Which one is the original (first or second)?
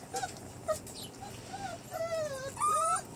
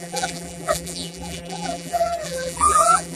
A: first